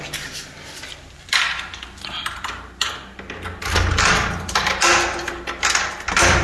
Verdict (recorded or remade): recorded